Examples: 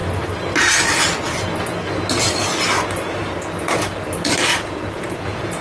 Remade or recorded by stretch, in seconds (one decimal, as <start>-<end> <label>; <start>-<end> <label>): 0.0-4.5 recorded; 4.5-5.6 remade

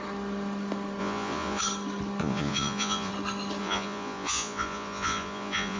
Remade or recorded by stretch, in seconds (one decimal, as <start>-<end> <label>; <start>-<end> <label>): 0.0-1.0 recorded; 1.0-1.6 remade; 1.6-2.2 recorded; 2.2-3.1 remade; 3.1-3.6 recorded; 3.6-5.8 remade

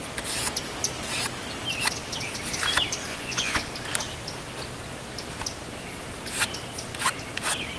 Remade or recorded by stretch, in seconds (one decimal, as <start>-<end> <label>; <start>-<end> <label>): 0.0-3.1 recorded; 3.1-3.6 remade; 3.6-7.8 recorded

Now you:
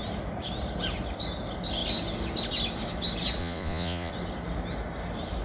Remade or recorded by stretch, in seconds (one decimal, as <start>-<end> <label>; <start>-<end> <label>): 0.0-3.4 recorded; 3.4-4.1 remade; 4.1-5.4 recorded

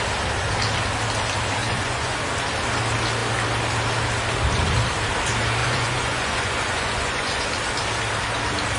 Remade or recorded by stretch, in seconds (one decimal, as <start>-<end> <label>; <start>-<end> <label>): 0.0-1.6 recorded; 1.6-2.2 remade; 2.2-5.6 recorded; 5.6-7.5 remade; 7.5-8.8 recorded

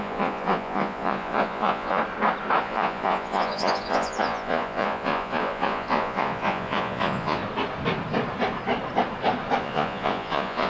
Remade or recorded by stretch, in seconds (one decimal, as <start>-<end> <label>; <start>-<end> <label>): 0.0-2.0 remade; 2.0-2.6 recorded; 2.6-7.4 remade; 7.4-9.6 recorded; 9.6-10.7 remade

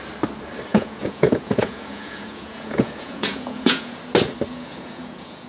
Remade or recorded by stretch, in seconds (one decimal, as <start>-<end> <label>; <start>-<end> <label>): 0.0-0.7 recorded; 0.7-4.0 remade; 4.0-4.5 recorded; 4.5-5.5 remade

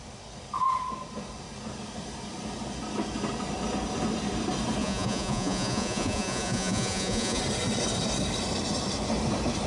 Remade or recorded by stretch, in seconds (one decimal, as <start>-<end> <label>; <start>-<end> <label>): 0.0-4.8 recorded; 4.8-7.4 remade; 7.4-9.7 recorded